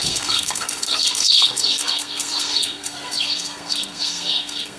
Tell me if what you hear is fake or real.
fake